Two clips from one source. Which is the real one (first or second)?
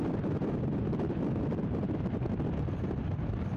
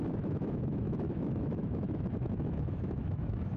first